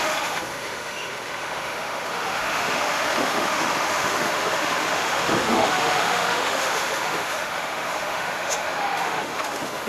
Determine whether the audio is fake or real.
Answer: fake